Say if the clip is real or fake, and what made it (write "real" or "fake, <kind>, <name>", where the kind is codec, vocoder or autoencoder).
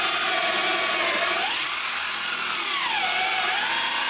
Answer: real